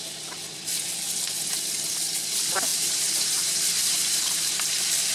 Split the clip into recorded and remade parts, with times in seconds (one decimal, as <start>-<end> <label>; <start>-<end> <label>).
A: 0.0-2.7 recorded; 2.7-5.1 remade

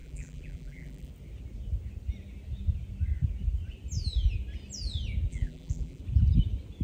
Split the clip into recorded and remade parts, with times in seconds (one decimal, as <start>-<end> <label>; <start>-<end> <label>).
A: 0.0-1.1 remade; 1.1-5.3 recorded; 5.3-6.0 remade; 6.0-6.8 recorded

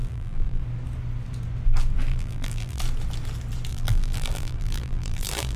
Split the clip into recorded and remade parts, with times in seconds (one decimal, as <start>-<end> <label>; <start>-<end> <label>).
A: 0.0-0.6 remade; 0.6-2.1 recorded; 2.1-2.8 remade; 2.8-3.7 recorded; 3.7-5.6 remade